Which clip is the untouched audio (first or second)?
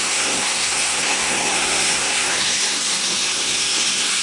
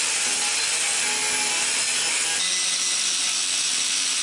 second